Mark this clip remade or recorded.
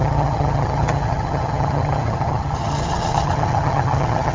remade